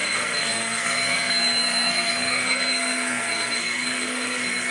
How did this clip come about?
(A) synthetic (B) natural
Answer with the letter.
A